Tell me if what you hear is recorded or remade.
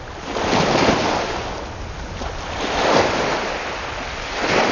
recorded